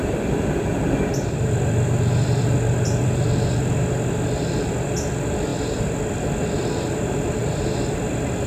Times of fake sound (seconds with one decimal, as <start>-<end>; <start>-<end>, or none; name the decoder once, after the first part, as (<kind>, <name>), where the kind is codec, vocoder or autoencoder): 0.0-3.8 (vocoder, BigVGAN v2); 5.5-6.0